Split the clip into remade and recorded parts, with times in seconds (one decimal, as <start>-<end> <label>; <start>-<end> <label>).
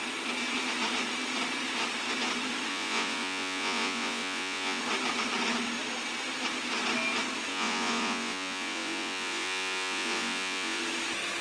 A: 0.0-2.7 recorded; 2.7-4.8 remade; 4.8-7.5 recorded; 7.5-10.8 remade; 10.8-11.4 recorded